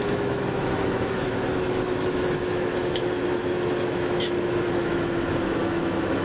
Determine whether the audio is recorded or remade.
remade